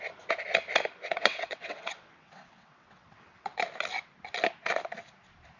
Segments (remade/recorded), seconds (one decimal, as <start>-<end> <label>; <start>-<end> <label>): 0.0-1.1 recorded; 1.1-3.6 remade; 3.6-5.6 recorded